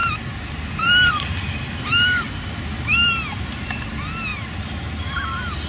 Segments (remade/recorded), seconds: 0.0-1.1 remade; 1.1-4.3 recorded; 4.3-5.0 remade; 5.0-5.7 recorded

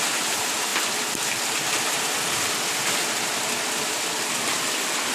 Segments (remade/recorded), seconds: 0.0-5.1 recorded